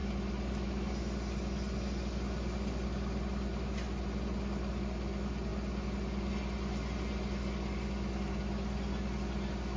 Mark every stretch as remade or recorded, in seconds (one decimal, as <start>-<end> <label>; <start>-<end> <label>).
0.0-9.8 recorded

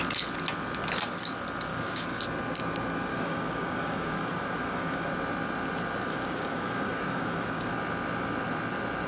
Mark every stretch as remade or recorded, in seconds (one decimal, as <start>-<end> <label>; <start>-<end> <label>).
0.0-1.7 recorded; 1.7-2.2 remade; 2.2-3.1 recorded; 3.1-5.1 remade; 5.1-6.1 recorded; 6.1-7.7 remade; 7.7-9.1 recorded

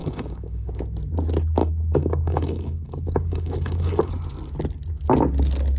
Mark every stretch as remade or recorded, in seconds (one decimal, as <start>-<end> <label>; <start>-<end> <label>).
0.0-0.7 remade; 0.7-1.6 recorded; 1.6-4.1 remade; 4.1-5.8 recorded

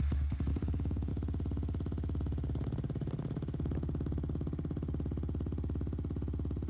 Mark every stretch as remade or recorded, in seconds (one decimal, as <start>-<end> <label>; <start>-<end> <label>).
0.0-0.5 recorded; 0.5-1.1 remade; 1.1-6.7 recorded

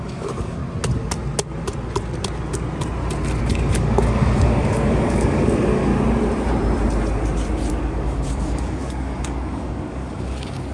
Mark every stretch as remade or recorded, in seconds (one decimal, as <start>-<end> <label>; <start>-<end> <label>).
0.0-0.6 remade; 0.6-3.4 recorded; 3.4-5.9 remade; 5.9-7.7 recorded; 7.7-10.7 remade

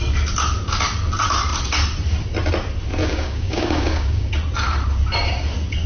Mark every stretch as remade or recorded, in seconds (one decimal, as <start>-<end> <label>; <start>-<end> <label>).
0.0-3.0 recorded; 3.0-4.3 remade; 4.3-5.9 recorded